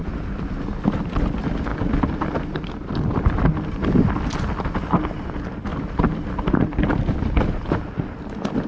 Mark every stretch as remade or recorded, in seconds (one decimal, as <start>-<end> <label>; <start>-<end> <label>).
0.0-1.7 recorded; 1.7-3.5 remade; 3.5-5.7 recorded; 5.7-7.8 remade; 7.8-8.7 recorded